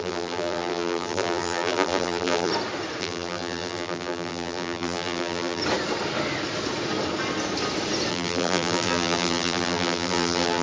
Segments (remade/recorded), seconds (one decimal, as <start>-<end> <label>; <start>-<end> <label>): 0.0-2.5 remade; 2.5-3.0 recorded; 3.0-5.6 remade; 5.6-8.1 recorded; 8.1-10.6 remade